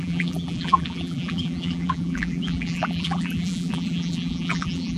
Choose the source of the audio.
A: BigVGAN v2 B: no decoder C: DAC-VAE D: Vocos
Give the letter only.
A